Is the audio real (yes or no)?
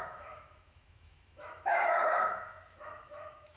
no